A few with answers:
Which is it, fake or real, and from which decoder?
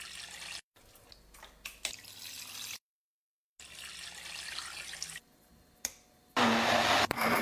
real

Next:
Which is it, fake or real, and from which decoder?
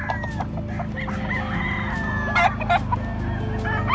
real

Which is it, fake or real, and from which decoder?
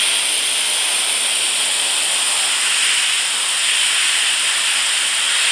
real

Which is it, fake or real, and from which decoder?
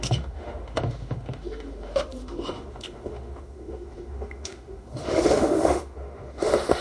fake, autoencoder, DAC-VAE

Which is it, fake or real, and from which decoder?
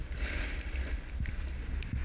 real